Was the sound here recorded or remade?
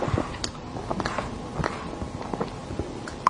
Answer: recorded